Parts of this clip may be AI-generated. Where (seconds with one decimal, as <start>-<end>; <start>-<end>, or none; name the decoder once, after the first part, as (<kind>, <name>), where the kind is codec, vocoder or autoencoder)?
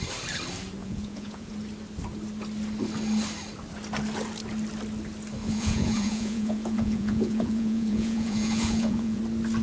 0.8-1.5 (vocoder, Vocos); 5.4-9.2